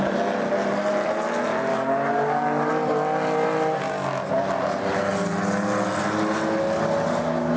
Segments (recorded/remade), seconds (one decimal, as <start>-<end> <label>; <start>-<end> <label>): 0.0-1.7 recorded; 1.7-2.7 remade; 2.7-7.6 recorded